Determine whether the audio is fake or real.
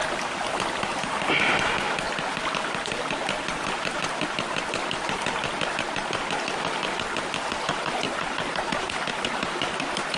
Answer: real